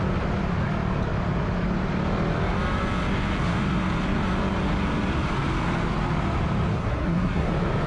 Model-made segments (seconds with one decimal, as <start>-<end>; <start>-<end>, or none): 6.7-7.5